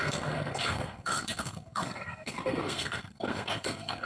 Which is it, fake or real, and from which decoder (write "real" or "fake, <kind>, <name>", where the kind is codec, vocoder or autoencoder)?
fake, codec, SNAC